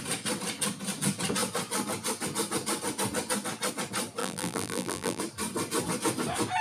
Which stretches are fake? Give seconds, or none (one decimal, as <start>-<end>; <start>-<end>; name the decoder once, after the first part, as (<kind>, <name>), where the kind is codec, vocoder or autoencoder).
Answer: 4.2-5.2 (vocoder, BigVGAN v2)